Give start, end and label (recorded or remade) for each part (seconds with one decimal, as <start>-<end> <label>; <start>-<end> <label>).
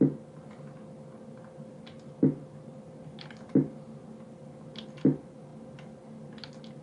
0.0-6.8 recorded